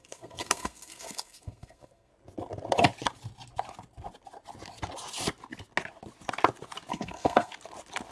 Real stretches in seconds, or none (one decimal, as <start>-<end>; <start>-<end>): 2.1-6.9; 7.5-8.1